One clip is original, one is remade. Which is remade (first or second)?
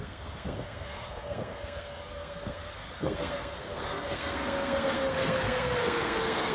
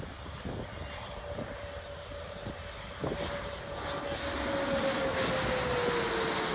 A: first